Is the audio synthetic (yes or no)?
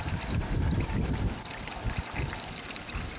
no